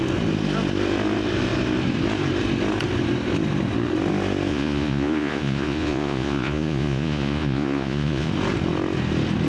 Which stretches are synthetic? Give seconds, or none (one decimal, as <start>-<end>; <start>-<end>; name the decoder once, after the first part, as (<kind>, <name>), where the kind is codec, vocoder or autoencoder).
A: 4.5-8.3 (vocoder, Vocos)